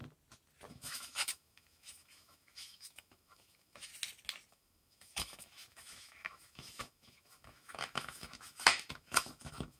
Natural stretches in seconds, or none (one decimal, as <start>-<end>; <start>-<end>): 0.0-0.7; 3.9-4.5